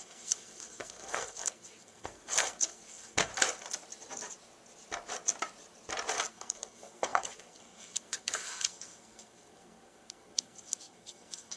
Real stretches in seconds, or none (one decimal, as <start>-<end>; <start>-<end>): 3.3-6.3